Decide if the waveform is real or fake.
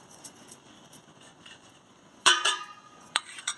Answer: fake